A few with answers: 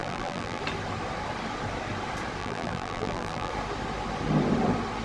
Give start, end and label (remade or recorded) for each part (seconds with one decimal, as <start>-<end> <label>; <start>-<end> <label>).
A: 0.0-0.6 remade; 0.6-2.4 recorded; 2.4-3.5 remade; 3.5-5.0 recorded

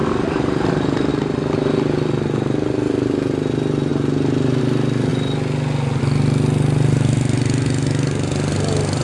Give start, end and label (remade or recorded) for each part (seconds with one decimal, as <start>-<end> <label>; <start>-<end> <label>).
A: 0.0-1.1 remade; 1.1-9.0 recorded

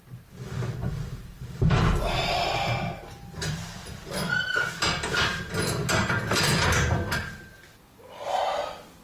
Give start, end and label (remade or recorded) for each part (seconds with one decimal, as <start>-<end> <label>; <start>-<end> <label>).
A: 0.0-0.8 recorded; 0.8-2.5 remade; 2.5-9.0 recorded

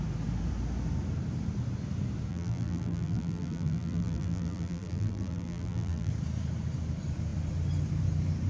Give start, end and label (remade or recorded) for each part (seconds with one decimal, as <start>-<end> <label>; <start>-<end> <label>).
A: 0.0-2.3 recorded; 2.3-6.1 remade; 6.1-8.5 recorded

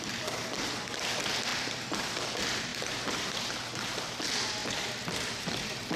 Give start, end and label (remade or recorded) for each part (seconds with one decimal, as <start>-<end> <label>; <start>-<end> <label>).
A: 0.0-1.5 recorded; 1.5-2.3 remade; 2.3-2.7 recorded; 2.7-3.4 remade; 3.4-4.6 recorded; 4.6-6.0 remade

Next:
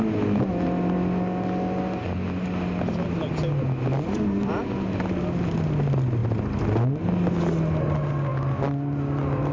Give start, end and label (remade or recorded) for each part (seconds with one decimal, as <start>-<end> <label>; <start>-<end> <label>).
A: 0.0-9.5 recorded

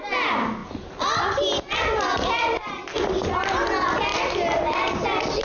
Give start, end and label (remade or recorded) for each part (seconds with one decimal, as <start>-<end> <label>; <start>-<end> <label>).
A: 0.0-5.4 recorded

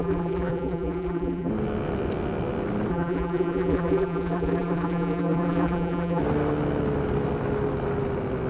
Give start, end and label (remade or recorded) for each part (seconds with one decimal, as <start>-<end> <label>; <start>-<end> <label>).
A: 0.0-1.5 remade; 1.5-2.9 recorded; 2.9-6.2 remade; 6.2-8.5 recorded